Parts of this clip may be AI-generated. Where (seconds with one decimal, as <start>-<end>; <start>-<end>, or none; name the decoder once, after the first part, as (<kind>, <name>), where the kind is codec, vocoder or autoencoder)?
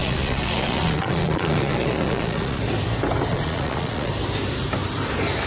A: 0.0-2.6 (vocoder, Vocos); 3.3-4.1